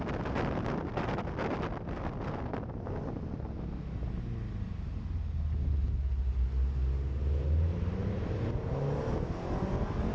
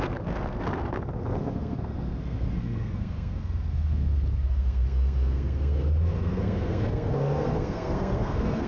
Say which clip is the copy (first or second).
second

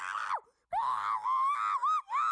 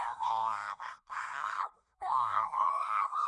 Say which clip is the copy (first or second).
second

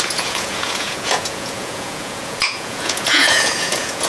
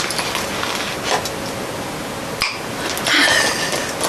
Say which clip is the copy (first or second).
first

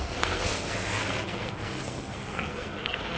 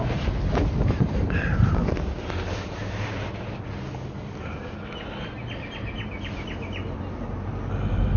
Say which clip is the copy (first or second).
first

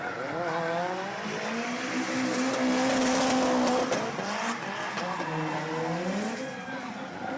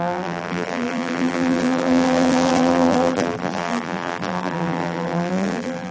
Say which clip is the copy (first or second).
second